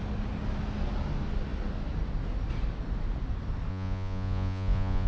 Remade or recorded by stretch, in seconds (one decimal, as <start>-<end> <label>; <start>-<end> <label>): 0.0-3.7 recorded; 3.7-5.1 remade